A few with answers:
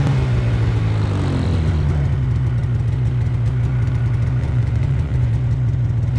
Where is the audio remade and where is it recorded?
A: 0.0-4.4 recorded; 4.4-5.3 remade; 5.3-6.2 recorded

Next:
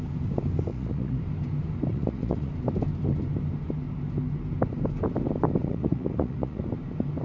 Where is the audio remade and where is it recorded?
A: 0.0-0.7 recorded; 0.7-1.2 remade; 1.2-1.9 recorded; 1.9-2.5 remade; 2.5-5.6 recorded; 5.6-6.6 remade; 6.6-7.2 recorded

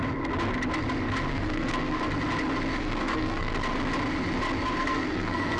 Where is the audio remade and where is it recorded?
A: 0.0-1.3 recorded; 1.3-2.0 remade; 2.0-2.8 recorded; 2.8-3.5 remade; 3.5-4.8 recorded; 4.8-5.6 remade

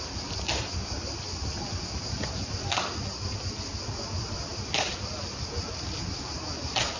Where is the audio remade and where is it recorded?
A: 0.0-7.0 recorded

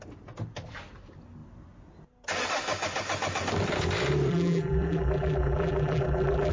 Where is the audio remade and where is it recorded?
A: 0.0-4.3 recorded; 4.3-6.5 remade

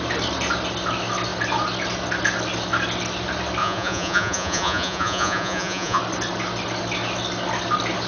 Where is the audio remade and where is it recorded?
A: 0.0-3.6 recorded; 3.6-6.0 remade; 6.0-8.1 recorded